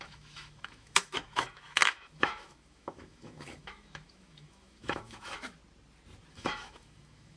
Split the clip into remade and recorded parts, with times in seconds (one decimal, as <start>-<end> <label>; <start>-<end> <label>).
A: 0.0-5.6 remade; 5.6-6.3 recorded; 6.3-7.4 remade